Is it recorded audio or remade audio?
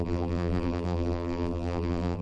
remade